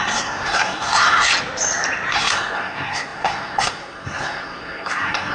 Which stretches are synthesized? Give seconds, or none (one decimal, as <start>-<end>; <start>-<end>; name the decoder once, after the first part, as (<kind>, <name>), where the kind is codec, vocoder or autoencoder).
0.0-1.3 (codec, SNAC); 2.1-5.3